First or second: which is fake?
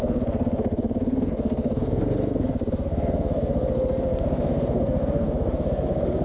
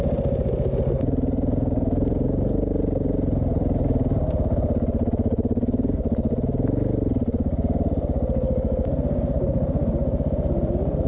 first